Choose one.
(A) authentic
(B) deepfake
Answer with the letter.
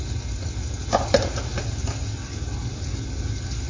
A